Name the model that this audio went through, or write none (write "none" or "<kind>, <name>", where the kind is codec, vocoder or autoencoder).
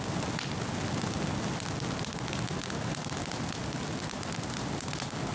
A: none